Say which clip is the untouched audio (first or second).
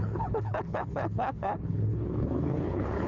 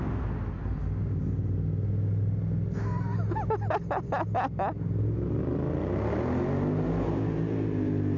second